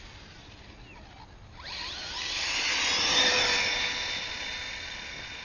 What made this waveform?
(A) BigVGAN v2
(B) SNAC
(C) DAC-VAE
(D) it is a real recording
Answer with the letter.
D